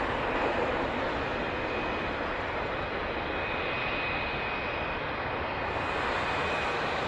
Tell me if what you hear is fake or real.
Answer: real